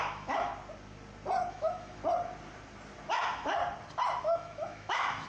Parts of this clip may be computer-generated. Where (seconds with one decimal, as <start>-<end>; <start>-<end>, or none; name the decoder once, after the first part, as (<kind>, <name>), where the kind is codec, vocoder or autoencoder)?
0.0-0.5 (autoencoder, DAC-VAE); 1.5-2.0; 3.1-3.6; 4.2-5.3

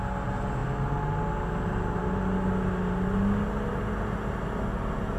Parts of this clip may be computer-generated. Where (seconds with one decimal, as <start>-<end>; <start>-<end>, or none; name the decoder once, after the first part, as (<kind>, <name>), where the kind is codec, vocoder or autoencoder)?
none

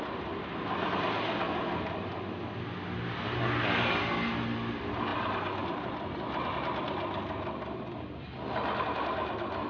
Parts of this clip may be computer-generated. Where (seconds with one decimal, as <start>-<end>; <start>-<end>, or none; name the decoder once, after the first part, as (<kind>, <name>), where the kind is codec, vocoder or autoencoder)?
none

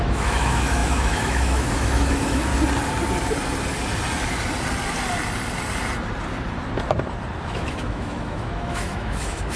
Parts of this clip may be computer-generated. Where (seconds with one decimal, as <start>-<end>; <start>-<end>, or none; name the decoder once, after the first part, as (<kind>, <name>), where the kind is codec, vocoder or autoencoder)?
0.0-2.5 (autoencoder, DAC-VAE); 7.4-9.6

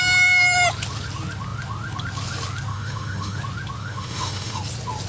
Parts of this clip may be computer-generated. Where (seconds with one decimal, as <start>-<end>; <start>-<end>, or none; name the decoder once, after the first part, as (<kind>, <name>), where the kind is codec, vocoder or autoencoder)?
2.7-3.4 (autoencoder, DAC-VAE); 3.8-4.6